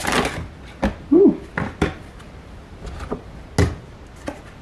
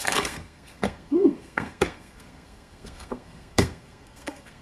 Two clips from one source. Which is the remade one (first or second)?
second